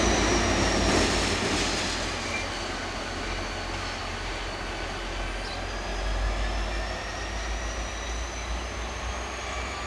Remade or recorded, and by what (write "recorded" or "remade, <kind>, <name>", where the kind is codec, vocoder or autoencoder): recorded